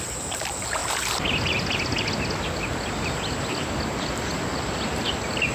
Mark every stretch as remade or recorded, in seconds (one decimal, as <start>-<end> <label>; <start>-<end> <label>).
0.0-5.5 recorded